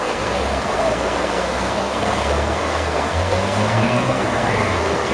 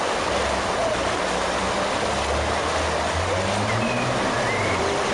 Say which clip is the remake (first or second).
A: first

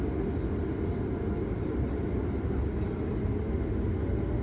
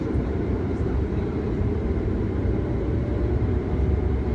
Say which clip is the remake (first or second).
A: second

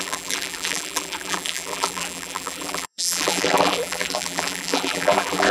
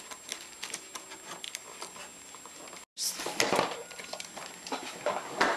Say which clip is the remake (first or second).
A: first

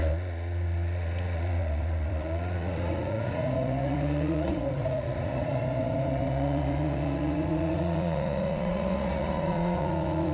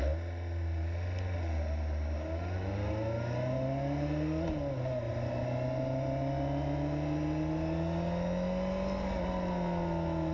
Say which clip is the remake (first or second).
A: first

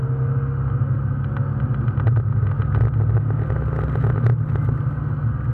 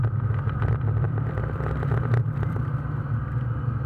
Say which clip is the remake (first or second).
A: second